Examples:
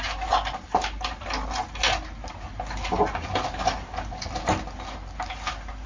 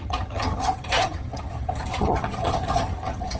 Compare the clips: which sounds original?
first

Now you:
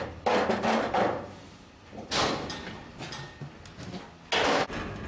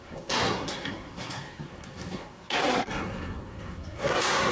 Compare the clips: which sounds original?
first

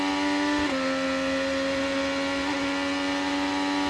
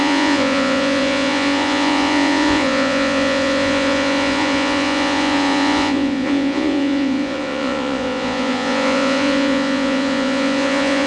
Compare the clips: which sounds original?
first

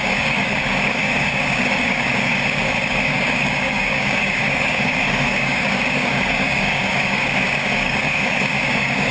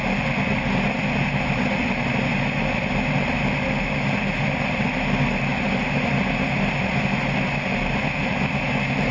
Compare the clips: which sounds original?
second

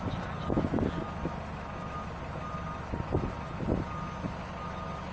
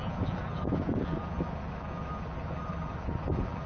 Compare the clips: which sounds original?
first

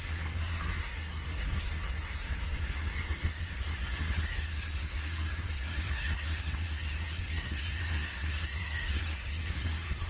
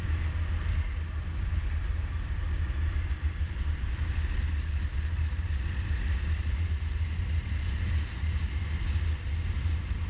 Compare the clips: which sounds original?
second